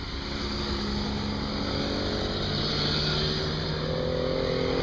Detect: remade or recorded recorded